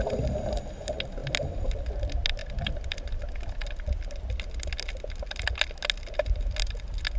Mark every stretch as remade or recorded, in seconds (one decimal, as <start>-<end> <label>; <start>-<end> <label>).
0.0-7.2 recorded